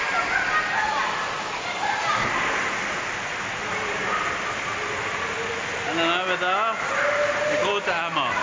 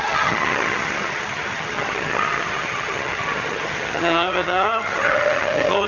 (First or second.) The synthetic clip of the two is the second